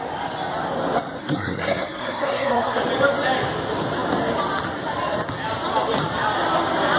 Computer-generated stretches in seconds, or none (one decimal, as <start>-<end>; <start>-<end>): 1.2-2.8